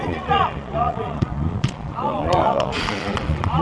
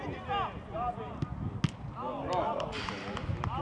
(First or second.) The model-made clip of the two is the first